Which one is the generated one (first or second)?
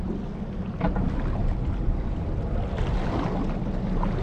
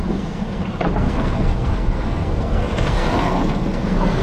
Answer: second